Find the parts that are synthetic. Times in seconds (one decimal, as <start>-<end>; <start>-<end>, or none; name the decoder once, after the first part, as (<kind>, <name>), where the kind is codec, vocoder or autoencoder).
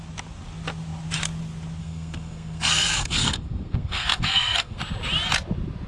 1.8-4.8 (codec, SNAC)